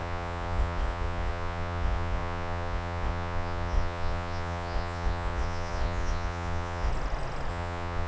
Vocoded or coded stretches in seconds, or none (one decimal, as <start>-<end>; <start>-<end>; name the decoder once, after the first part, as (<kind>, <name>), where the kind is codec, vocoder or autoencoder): 0.0-6.9 (vocoder, Vocos); 7.5-8.1